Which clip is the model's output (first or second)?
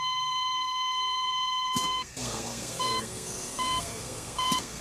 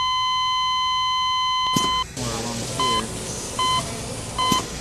first